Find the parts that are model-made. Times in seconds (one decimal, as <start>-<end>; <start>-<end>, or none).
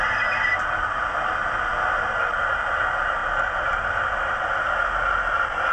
3.2-4.6